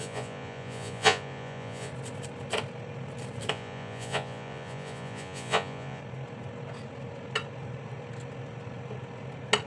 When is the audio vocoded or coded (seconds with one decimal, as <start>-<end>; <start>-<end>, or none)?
0.0-1.9; 3.5-6.0